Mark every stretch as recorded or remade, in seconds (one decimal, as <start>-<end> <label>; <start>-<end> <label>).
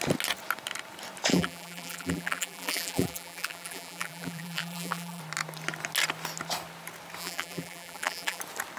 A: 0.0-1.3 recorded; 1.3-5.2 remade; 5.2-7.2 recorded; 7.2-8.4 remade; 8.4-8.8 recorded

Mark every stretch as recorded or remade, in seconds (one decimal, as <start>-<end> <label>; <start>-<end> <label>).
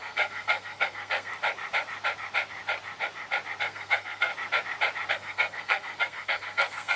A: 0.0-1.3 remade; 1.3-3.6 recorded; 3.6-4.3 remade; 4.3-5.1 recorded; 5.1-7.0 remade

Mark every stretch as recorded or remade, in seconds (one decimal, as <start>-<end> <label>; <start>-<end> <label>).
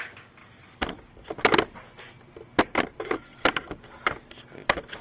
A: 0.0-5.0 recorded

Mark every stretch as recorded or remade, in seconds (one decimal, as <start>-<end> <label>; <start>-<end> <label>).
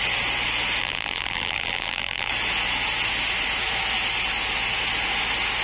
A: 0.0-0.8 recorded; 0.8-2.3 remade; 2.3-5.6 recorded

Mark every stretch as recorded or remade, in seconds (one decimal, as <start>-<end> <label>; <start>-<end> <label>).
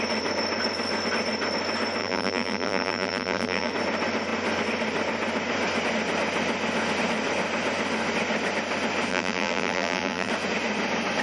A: 0.0-2.0 recorded; 2.0-3.7 remade; 3.7-9.1 recorded; 9.1-10.3 remade; 10.3-11.2 recorded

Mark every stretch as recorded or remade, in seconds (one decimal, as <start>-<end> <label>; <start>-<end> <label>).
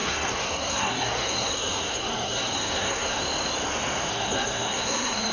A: 0.0-3.2 remade; 3.2-4.1 recorded; 4.1-5.3 remade